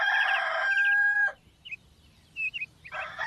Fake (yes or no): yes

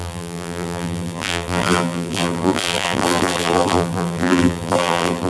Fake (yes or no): yes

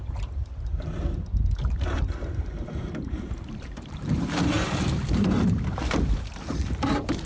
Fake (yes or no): yes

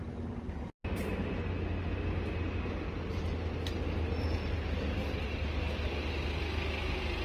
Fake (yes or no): no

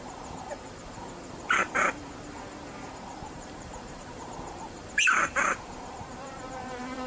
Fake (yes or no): yes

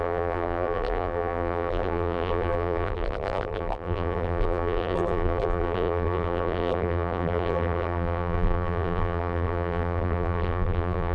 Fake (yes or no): yes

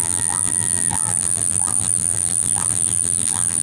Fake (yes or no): yes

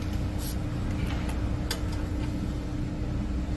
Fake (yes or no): no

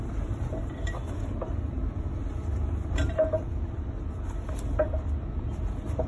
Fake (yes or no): yes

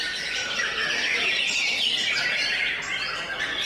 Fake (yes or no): yes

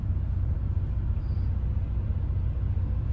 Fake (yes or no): no